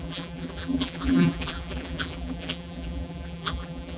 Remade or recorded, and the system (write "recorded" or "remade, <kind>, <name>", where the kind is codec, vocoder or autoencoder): remade, vocoder, BigVGAN v2